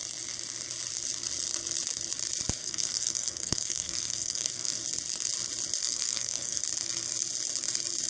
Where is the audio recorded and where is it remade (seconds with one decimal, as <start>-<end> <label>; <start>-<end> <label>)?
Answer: 0.0-2.6 recorded; 2.6-4.8 remade; 4.8-5.8 recorded; 5.8-6.6 remade; 6.6-8.1 recorded